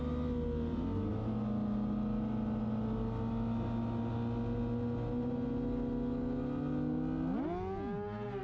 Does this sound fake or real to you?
real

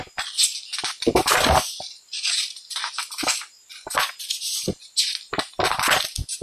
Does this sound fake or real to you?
real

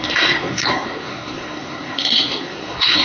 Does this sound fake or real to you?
fake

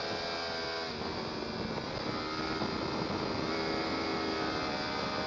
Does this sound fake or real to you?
real